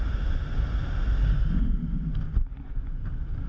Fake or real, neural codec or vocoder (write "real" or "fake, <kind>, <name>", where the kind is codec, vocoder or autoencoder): real